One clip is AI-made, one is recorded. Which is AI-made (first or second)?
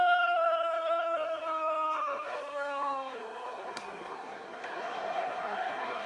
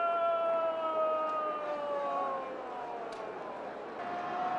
first